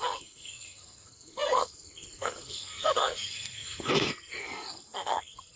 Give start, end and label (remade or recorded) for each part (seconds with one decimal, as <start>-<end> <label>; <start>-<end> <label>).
0.0-5.6 remade